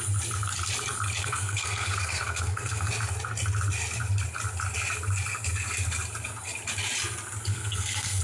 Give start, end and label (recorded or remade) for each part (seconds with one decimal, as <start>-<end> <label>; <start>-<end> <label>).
0.0-1.2 recorded; 1.2-2.9 remade; 2.9-7.5 recorded; 7.5-8.2 remade